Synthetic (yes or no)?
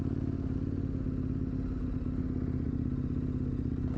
no